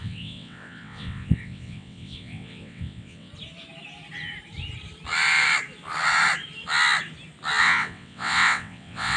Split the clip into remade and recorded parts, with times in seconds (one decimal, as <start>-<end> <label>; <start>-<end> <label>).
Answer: 0.0-3.3 remade; 3.3-7.6 recorded; 7.6-9.2 remade